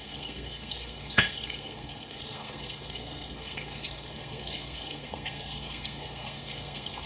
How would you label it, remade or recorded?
remade